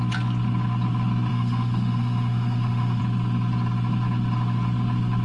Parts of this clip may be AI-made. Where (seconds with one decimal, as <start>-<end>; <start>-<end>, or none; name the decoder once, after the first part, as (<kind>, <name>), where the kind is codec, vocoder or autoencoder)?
1.3-3.0 (autoencoder, DAC-VAE)